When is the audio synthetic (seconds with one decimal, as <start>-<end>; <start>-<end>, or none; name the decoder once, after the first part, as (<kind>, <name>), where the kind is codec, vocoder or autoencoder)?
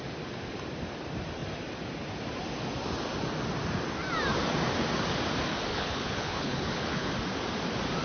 5.7-7.1 (codec, HILCodec)